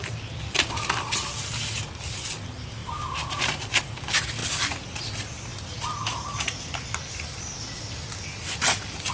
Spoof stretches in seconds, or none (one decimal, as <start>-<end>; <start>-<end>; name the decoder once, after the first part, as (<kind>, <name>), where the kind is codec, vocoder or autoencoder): 2.8-3.8 (vocoder, BigVGAN v2)